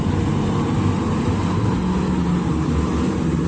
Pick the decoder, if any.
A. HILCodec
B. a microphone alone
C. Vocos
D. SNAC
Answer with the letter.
B